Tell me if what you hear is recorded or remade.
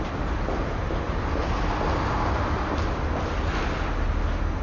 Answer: recorded